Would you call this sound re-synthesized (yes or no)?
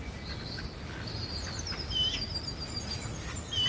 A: no